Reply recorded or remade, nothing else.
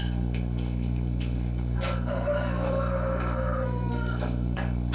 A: remade